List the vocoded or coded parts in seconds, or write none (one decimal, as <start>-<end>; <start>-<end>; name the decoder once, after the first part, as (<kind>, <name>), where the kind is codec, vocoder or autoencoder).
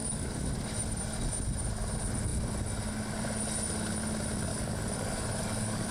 0.0-0.5 (codec, DAC); 4.5-5.9